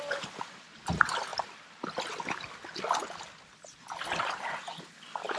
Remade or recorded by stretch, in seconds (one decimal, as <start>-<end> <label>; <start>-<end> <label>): 0.0-5.4 recorded